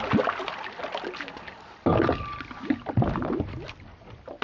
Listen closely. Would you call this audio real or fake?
real